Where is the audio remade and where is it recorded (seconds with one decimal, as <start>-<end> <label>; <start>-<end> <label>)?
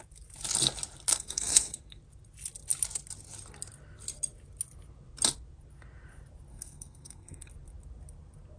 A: 0.0-1.1 recorded; 1.1-2.0 remade; 2.0-6.5 recorded; 6.5-7.5 remade; 7.5-8.6 recorded